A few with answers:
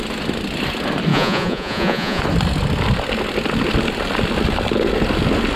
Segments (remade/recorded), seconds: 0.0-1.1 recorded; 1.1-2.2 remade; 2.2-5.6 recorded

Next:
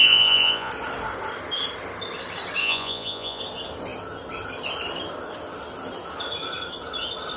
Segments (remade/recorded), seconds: 0.0-0.7 remade; 0.7-2.6 recorded; 2.6-3.4 remade; 3.4-7.4 recorded

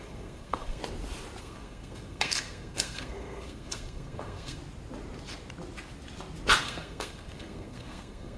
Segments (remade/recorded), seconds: 0.0-0.8 remade; 0.8-1.4 recorded; 1.4-4.6 remade; 4.6-6.6 recorded; 6.6-8.4 remade

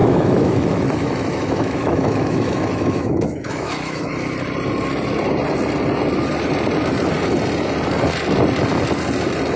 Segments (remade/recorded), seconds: 0.0-4.1 remade; 4.1-9.6 recorded

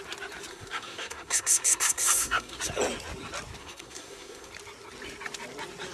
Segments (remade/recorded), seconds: 0.0-0.5 recorded; 0.5-2.6 remade; 2.6-3.6 recorded; 3.6-4.5 remade; 4.5-5.9 recorded

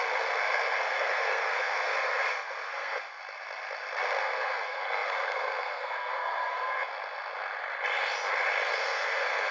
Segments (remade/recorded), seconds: 0.0-3.2 remade; 3.2-4.2 recorded; 4.2-6.9 remade; 6.9-8.8 recorded; 8.8-9.5 remade